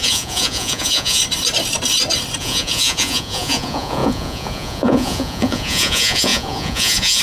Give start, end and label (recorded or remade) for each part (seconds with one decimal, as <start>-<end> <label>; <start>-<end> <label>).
0.0-1.2 remade; 1.2-2.4 recorded; 2.4-7.2 remade